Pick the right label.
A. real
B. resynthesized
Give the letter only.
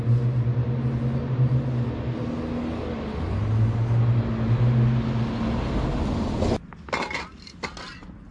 A